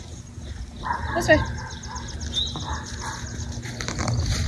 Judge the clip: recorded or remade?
recorded